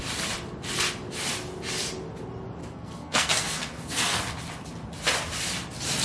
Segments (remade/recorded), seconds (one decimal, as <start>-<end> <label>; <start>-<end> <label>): 0.0-2.6 recorded; 2.6-4.2 remade; 4.2-6.0 recorded